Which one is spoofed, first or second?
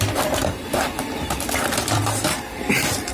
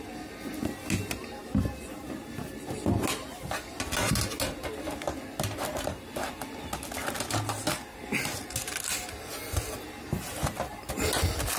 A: first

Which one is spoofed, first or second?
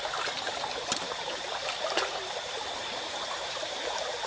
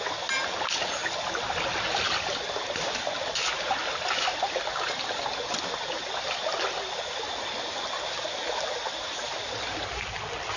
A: first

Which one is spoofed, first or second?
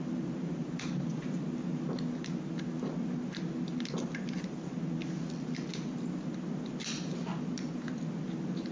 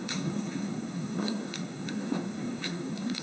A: second